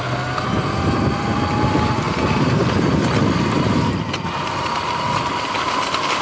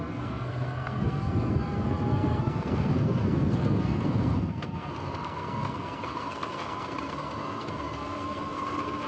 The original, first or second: first